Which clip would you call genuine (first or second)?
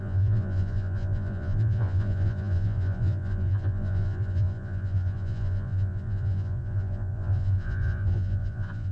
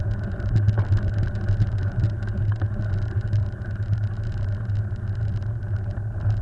second